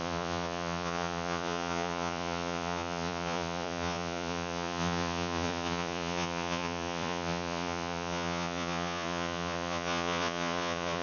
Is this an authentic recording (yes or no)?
no